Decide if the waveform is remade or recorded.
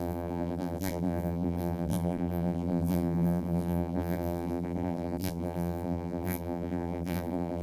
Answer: remade